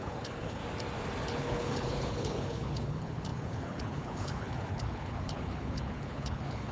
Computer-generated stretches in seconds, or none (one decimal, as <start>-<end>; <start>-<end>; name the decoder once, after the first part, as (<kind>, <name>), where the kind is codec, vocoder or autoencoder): 0.0-0.6 (codec, HILCodec); 1.3-6.7